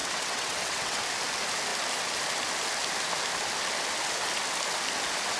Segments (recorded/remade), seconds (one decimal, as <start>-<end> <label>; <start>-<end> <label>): 0.0-1.0 remade; 1.0-5.4 recorded